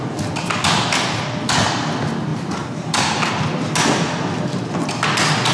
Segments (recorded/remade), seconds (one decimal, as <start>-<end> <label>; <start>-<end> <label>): 0.0-2.3 recorded; 2.3-3.3 remade; 3.3-5.5 recorded